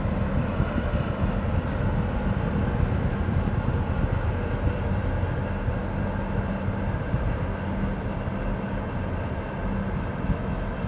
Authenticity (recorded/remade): recorded